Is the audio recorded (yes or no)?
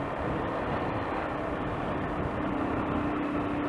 yes